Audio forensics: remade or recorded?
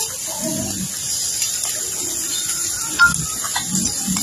recorded